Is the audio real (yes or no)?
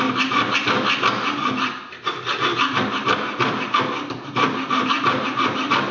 yes